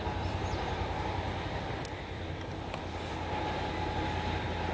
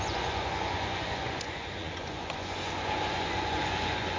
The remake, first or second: second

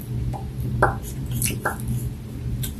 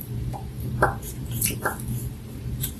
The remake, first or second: second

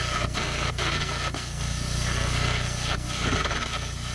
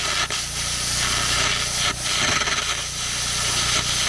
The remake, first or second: first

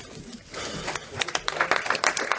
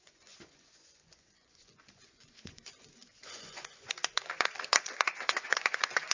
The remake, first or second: second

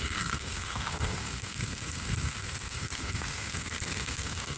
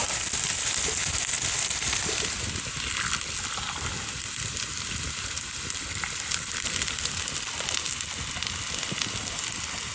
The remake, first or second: first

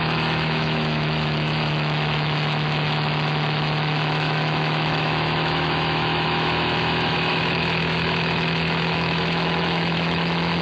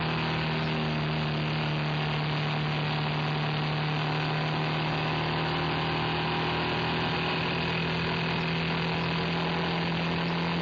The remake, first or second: first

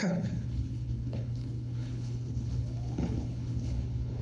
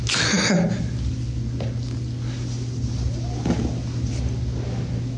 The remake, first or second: first